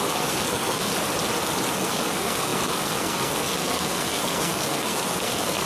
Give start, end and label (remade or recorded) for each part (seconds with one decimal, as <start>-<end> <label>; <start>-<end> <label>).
0.0-0.9 remade; 0.9-1.7 recorded; 1.7-5.7 remade